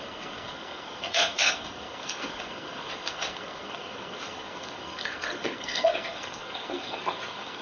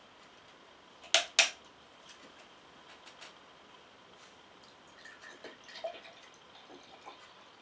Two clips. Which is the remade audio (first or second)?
first